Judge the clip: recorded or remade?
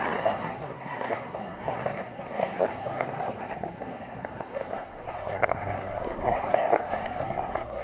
remade